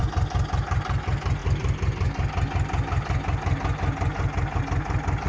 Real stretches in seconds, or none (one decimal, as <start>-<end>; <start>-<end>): 0.0-5.3